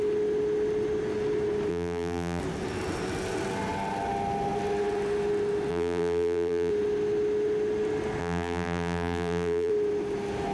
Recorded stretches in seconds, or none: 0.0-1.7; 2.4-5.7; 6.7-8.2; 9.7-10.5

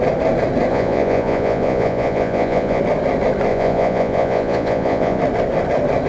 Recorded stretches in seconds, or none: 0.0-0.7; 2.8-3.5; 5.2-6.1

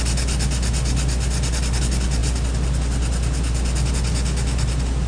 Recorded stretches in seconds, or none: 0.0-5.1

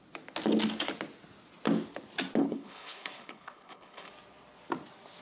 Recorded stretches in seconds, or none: 0.0-2.4; 4.1-5.2